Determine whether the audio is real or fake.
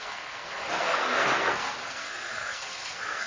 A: fake